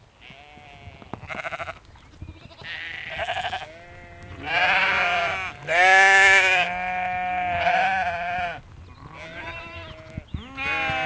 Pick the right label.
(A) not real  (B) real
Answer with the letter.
B